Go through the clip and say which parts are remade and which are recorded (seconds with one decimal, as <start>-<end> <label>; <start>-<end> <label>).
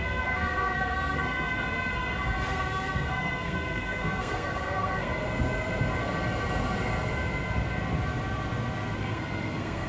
0.0-1.9 remade; 1.9-2.5 recorded; 2.5-5.1 remade; 5.1-9.0 recorded; 9.0-9.9 remade